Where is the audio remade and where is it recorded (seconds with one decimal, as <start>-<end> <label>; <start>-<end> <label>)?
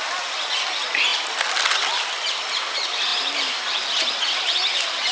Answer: 0.0-1.1 recorded; 1.1-1.7 remade; 1.7-3.1 recorded; 3.1-4.4 remade; 4.4-5.1 recorded